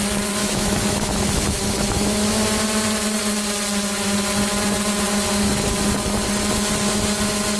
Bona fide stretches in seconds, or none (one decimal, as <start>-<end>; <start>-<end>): 0.0-0.4; 2.3-7.6